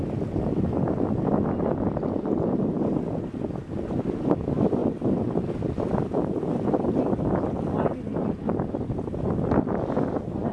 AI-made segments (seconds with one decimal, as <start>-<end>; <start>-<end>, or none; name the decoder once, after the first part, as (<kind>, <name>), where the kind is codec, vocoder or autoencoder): none